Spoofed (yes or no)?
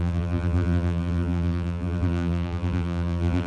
yes